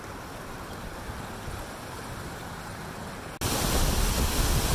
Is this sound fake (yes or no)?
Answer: no